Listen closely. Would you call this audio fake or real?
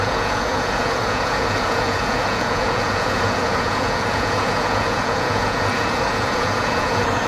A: fake